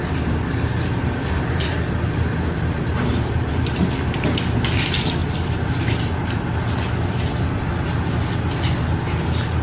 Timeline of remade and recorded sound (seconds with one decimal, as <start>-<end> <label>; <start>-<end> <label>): 0.0-5.2 recorded; 5.2-7.7 remade; 7.7-9.6 recorded